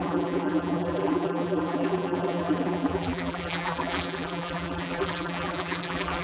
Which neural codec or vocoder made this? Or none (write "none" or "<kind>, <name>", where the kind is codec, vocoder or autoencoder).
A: vocoder, BigVGAN v2